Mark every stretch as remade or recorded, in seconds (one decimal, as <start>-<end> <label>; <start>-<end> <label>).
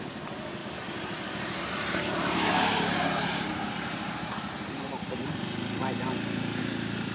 0.0-0.6 recorded; 0.6-4.9 remade; 4.9-7.1 recorded